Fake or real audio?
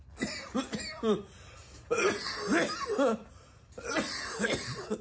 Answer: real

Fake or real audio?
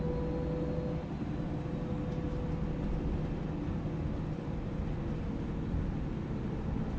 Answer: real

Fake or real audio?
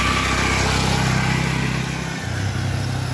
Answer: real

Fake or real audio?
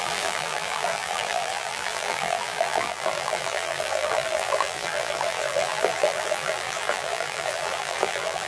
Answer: fake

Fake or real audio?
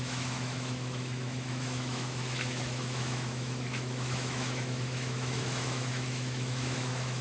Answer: fake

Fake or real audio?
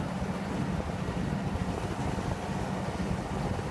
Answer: real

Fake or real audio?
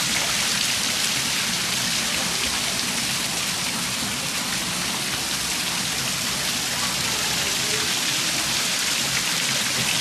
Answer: real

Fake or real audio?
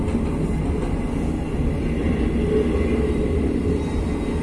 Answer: real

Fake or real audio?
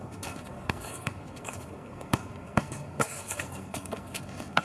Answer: fake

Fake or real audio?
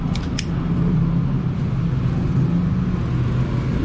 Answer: real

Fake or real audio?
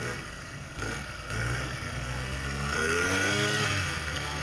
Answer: fake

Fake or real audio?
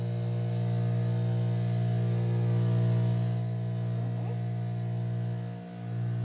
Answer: real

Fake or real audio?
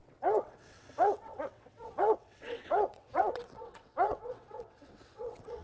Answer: fake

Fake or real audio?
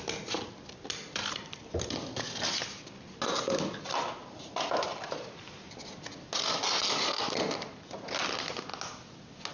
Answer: real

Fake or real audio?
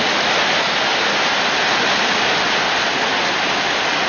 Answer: real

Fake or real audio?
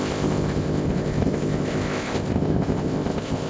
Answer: fake